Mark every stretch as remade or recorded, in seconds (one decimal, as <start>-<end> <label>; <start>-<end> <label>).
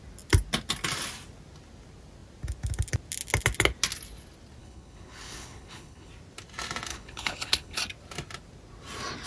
0.0-4.6 recorded; 4.6-6.1 remade; 6.1-6.9 recorded; 6.9-7.8 remade; 7.8-9.3 recorded